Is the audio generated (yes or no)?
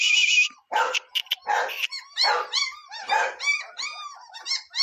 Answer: no